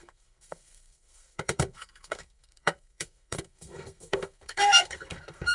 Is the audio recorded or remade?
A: remade